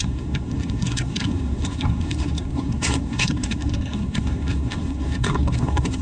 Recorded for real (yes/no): no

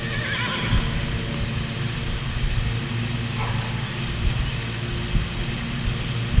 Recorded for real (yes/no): yes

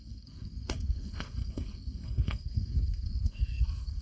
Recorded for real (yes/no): no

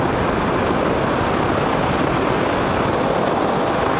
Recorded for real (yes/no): yes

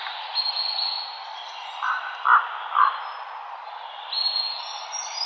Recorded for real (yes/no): yes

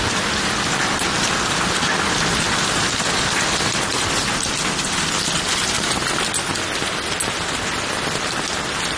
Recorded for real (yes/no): yes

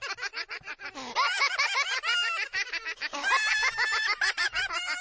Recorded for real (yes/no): yes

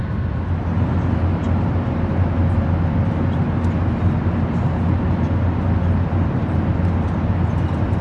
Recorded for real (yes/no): yes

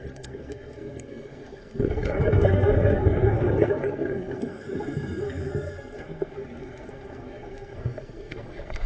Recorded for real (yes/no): no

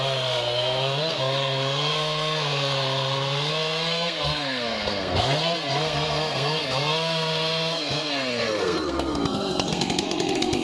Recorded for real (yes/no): no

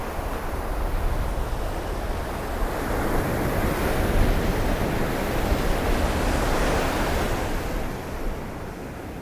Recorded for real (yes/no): yes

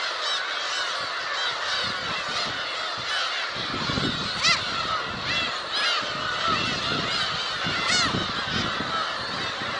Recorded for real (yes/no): yes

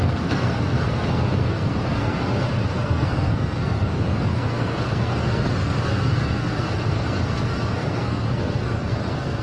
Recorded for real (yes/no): no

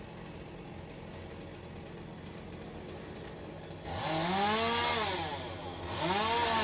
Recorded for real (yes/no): yes